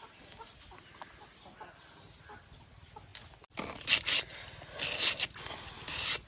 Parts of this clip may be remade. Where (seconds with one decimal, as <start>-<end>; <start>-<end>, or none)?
none